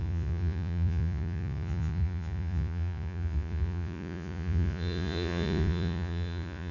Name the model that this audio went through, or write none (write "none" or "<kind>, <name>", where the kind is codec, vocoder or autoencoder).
vocoder, Vocos